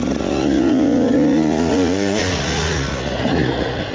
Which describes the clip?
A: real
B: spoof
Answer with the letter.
B